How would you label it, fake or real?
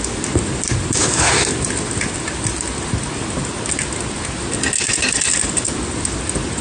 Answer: real